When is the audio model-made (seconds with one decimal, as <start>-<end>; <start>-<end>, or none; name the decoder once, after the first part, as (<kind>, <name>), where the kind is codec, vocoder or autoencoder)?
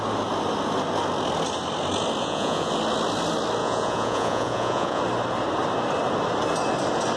2.2-2.7 (vocoder, Vocos); 3.6-5.0